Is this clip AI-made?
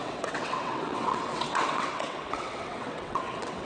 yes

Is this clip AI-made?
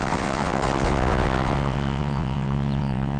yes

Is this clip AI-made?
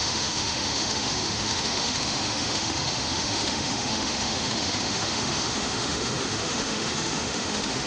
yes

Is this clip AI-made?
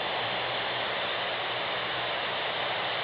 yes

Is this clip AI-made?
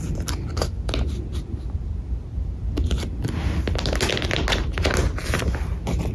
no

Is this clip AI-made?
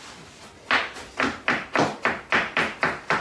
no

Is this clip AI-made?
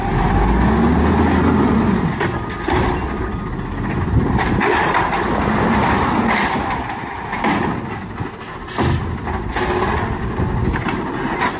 no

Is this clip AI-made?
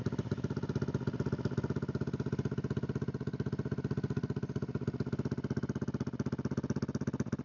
no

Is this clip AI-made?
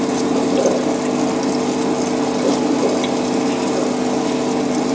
no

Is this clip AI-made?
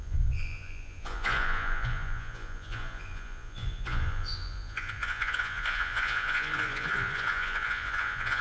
yes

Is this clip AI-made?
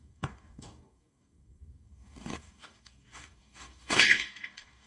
yes